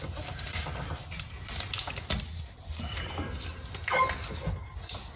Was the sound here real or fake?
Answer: real